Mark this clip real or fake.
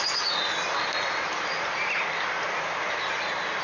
real